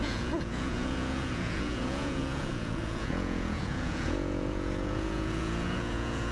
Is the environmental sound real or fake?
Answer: fake